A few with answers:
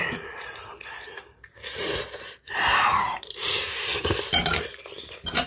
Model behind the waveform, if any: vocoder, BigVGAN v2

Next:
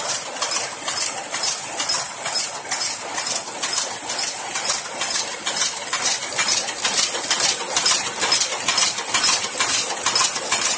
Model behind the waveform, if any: none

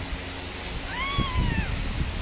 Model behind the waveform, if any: none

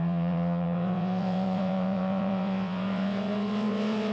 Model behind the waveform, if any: vocoder, WaveNeXt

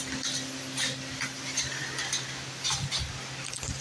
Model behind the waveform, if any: none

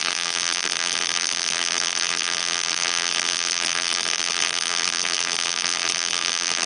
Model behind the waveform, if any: vocoder, BigVGAN v2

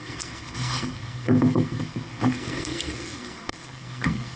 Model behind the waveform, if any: codec, SNAC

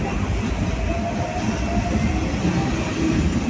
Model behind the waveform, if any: none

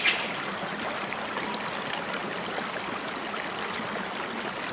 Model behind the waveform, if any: none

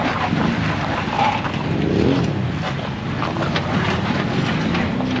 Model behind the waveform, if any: none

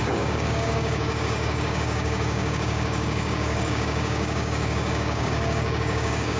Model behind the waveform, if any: codec, DAC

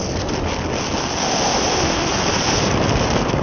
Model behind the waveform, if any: none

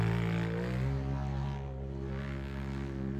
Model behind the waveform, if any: none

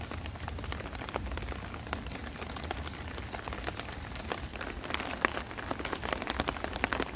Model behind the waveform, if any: none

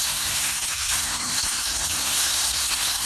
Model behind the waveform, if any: codec, SNAC